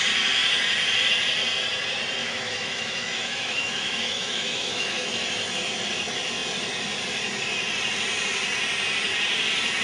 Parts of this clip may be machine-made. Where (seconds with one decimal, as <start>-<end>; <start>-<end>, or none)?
2.2-5.1